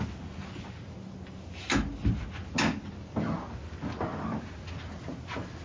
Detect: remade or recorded recorded